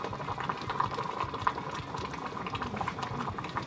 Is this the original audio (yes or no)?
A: yes